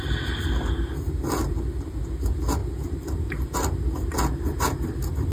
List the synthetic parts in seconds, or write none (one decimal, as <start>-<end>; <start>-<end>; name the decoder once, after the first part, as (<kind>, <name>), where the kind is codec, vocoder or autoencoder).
none